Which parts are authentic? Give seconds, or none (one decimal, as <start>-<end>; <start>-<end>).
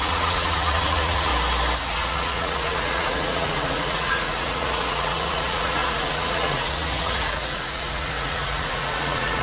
1.3-1.8